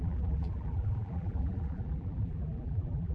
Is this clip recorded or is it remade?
remade